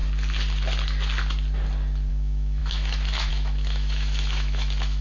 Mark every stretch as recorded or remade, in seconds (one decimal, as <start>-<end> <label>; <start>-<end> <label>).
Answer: 0.0-2.1 recorded; 2.1-5.0 remade